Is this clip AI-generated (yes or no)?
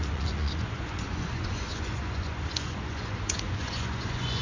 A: yes